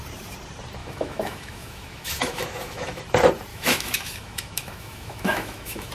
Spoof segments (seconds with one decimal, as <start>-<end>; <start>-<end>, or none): 0.8-3.0; 3.5-5.9

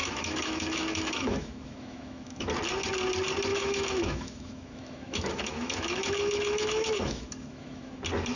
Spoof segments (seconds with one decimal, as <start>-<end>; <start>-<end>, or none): 0.0-2.5; 3.5-8.0

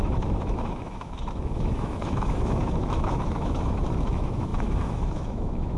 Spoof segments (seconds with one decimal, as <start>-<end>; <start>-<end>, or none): 0.0-5.8

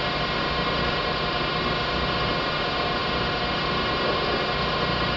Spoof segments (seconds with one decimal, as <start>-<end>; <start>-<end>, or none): 0.0-5.2

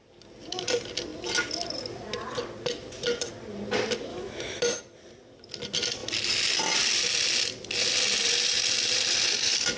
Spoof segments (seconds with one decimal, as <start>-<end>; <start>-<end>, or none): 4.1-4.8